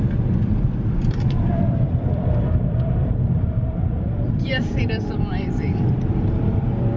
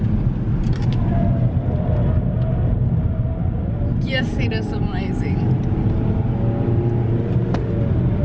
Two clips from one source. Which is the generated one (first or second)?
first